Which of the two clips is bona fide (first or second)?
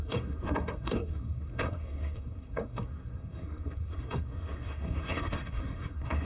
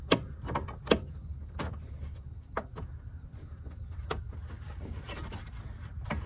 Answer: second